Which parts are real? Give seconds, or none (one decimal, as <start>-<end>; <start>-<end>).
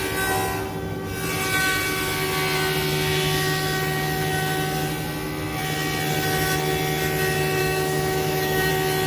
0.0-7.6; 8.7-9.1